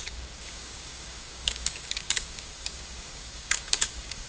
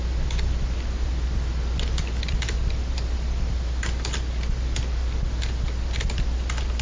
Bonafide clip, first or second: second